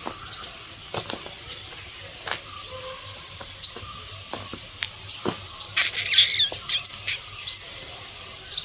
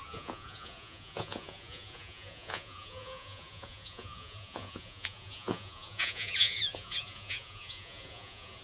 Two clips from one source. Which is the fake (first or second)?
second